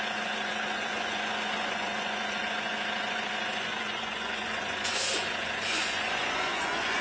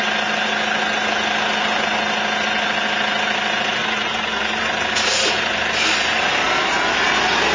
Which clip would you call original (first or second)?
second